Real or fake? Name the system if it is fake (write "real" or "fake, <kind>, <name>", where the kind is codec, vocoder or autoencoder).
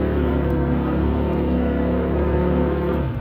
fake, codec, SNAC